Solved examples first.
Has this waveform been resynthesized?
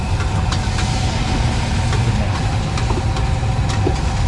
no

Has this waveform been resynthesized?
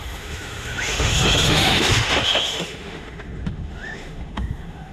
yes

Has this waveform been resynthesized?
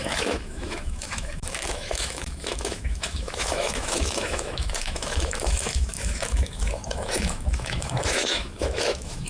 yes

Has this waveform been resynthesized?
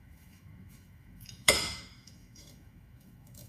yes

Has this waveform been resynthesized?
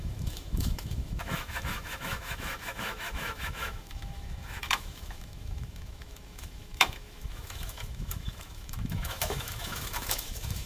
yes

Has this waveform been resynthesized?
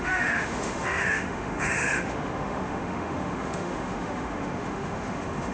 yes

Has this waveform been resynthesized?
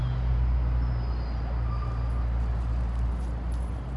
no